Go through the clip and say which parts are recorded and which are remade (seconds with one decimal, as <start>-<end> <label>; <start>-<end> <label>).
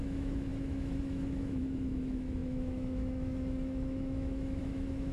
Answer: 0.0-5.1 remade